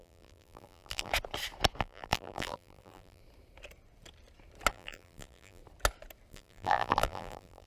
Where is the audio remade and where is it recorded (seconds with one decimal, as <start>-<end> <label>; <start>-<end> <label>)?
0.0-1.1 remade; 1.1-1.8 recorded; 1.8-3.2 remade; 3.2-4.7 recorded; 4.7-5.6 remade; 5.6-6.3 recorded; 6.3-7.7 remade